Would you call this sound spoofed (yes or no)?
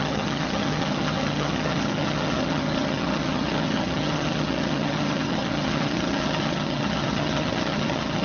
yes